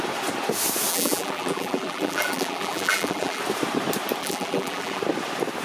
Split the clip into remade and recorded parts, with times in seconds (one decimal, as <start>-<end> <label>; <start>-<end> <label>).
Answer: 0.0-0.9 recorded; 0.9-3.4 remade; 3.4-4.2 recorded; 4.2-5.0 remade; 5.0-5.6 recorded